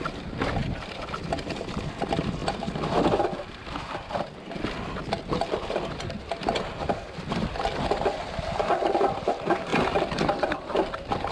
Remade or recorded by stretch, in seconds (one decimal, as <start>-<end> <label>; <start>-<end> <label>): 0.0-11.3 recorded